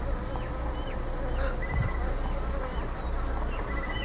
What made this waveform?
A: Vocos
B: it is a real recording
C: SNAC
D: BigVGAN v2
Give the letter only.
B